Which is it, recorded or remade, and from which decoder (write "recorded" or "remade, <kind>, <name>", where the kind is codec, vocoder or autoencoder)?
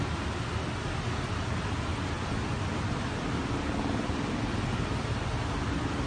recorded